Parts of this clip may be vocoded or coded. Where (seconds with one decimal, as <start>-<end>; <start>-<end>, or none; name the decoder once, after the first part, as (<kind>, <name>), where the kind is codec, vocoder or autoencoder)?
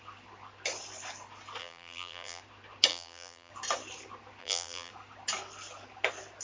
1.6-2.4 (vocoder, BigVGAN v2); 2.9-3.5; 4.4-4.9